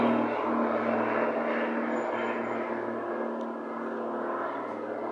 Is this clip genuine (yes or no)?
yes